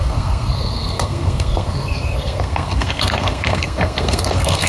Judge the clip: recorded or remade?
remade